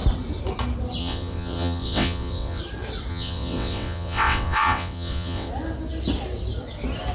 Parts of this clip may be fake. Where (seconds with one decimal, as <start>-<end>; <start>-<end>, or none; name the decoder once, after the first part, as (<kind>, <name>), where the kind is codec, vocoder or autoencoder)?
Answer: 1.0-2.6 (vocoder, WaveNeXt); 3.1-5.5